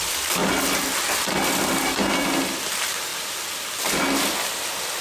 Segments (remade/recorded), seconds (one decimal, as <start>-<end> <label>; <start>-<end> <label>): 0.0-0.4 remade; 0.4-1.2 recorded; 1.2-3.1 remade; 3.1-4.4 recorded; 4.4-5.0 remade